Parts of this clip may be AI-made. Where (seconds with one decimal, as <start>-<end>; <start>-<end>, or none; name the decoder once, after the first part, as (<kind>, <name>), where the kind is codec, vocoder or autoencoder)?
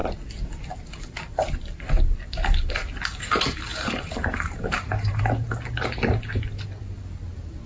3.7-5.2 (vocoder, BigVGAN v2)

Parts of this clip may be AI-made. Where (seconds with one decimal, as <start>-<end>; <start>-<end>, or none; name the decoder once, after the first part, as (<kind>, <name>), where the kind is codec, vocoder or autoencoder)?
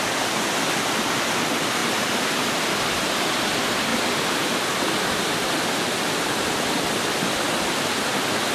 none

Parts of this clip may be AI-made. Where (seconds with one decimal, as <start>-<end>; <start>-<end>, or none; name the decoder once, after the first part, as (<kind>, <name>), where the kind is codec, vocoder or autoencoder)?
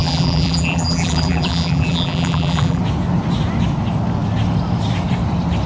0.0-2.8 (vocoder, BigVGAN v2)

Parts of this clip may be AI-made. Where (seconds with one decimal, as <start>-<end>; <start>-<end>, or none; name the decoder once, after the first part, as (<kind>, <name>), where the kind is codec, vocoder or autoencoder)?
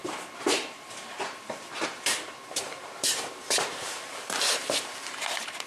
0.0-5.7 (vocoder, BigVGAN v2)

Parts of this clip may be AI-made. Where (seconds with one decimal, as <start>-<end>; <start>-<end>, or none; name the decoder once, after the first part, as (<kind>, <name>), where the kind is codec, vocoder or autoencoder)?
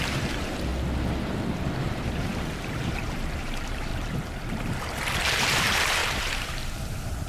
0.0-0.7 (vocoder, BigVGAN v2); 1.8-3.9; 5.3-7.3